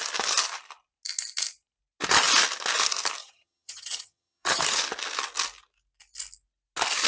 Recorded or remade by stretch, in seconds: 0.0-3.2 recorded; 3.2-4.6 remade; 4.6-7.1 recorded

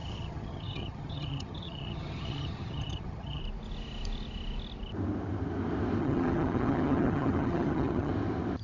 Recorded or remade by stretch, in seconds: 0.0-3.4 remade; 3.4-6.0 recorded; 6.0-8.1 remade; 8.1-8.6 recorded

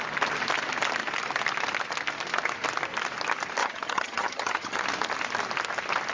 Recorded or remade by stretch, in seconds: 0.0-3.6 recorded; 3.6-4.8 remade; 4.8-6.1 recorded